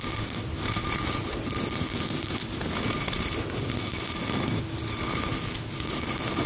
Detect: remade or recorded recorded